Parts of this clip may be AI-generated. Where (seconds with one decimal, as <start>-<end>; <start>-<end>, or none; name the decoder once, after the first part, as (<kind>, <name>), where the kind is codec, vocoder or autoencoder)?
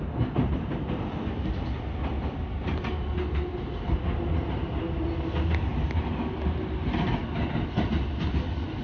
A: none